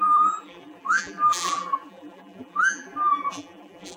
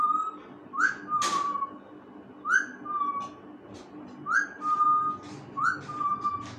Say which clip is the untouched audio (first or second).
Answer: second